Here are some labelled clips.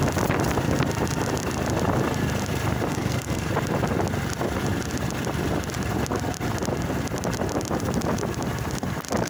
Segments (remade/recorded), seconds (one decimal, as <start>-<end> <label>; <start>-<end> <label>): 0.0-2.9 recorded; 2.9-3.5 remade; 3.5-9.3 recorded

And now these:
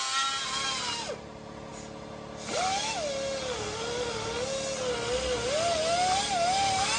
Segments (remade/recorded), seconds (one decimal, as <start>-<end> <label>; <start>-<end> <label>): 0.0-7.0 recorded

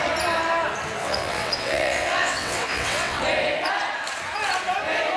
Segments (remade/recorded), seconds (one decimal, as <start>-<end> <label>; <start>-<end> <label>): 0.0-1.0 recorded; 1.0-3.2 remade; 3.2-5.2 recorded

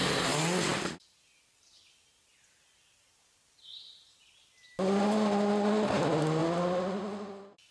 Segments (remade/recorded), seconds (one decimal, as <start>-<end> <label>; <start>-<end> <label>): 0.0-7.7 recorded

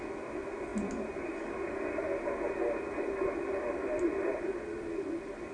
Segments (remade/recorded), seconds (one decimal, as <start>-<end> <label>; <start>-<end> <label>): 0.0-5.5 recorded

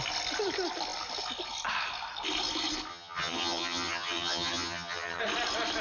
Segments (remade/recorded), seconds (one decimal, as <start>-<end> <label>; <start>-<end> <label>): 0.0-2.9 recorded; 2.9-5.2 remade; 5.2-5.8 recorded

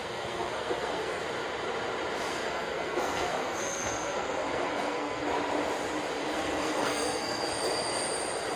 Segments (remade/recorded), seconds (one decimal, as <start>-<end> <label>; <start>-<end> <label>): 0.0-1.2 remade; 1.2-2.3 recorded; 2.3-5.2 remade; 5.2-6.2 recorded; 6.2-7.4 remade; 7.4-8.6 recorded